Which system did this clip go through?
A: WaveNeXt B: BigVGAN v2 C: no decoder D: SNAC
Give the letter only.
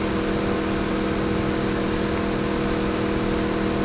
C